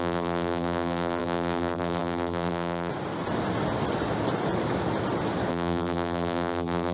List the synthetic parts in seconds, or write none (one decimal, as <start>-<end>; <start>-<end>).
0.0-2.9; 5.5-6.9